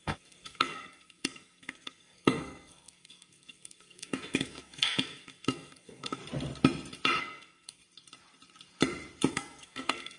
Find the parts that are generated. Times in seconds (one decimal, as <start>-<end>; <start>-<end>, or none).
0.0-6.2; 7.2-7.8; 9.3-10.2